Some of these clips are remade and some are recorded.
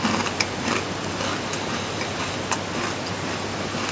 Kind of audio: recorded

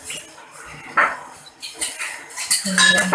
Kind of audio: recorded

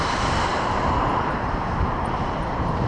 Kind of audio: remade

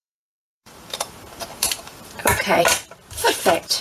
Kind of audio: remade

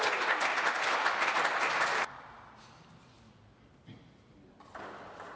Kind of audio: recorded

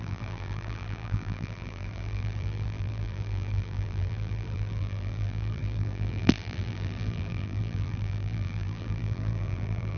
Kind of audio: remade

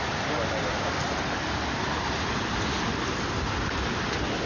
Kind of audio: recorded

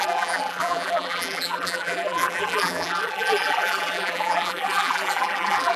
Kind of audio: remade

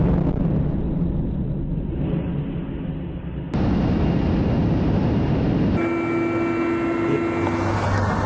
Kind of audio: recorded